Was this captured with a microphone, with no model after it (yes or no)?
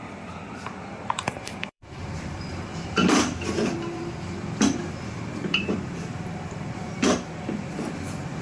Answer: no